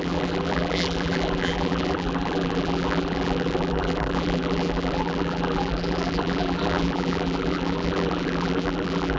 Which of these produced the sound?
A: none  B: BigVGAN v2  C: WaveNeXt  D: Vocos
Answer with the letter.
B